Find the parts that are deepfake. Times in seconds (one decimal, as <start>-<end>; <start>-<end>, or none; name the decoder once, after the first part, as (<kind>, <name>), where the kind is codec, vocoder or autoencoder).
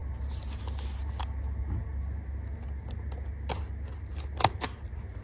none